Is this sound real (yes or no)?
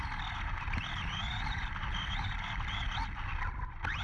yes